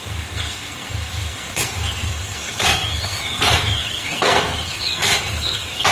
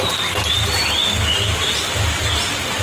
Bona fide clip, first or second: second